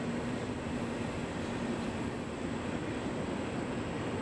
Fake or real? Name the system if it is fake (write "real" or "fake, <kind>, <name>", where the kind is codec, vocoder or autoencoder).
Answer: real